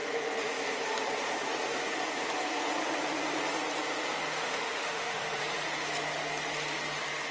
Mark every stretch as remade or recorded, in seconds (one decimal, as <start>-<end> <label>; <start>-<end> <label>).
0.0-4.4 recorded; 4.4-5.4 remade; 5.4-7.3 recorded

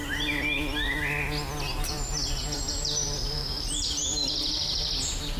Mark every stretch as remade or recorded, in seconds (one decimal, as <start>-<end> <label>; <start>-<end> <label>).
0.0-1.7 recorded; 1.7-4.9 remade; 4.9-5.4 recorded

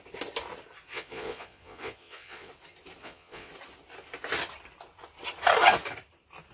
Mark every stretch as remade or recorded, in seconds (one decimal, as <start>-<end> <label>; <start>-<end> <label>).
0.0-0.9 recorded; 0.9-2.5 remade; 2.5-3.0 recorded; 3.0-3.5 remade; 3.5-6.5 recorded

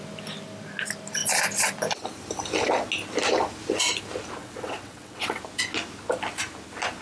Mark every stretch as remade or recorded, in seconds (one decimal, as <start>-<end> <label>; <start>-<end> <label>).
0.0-4.4 recorded; 4.4-5.4 remade; 5.4-7.0 recorded